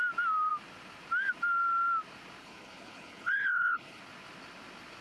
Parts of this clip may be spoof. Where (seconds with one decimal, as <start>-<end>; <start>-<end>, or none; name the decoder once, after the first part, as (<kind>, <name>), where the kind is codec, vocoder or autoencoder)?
2.4-4.0 (codec, HILCodec)